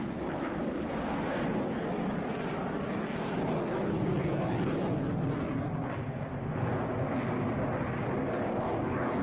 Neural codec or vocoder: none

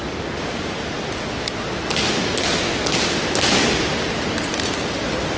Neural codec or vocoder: none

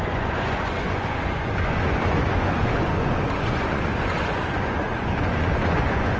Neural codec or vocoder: vocoder, Vocos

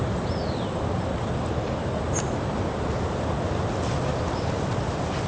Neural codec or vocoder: none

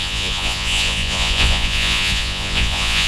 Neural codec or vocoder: vocoder, Vocos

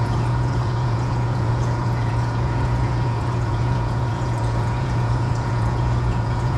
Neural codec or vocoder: vocoder, Vocos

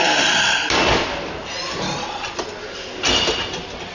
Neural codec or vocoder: none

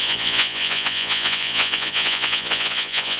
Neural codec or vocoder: vocoder, Vocos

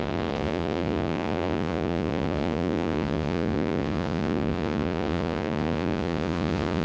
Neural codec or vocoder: vocoder, Vocos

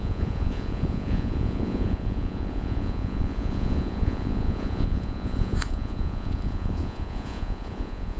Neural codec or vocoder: vocoder, Vocos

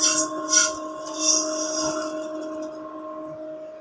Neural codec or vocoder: none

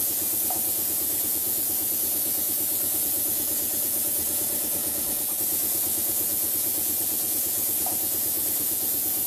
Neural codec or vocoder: vocoder, Vocos